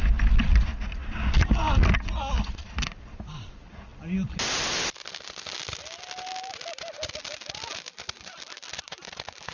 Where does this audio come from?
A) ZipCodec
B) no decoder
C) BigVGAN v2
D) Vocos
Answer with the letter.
B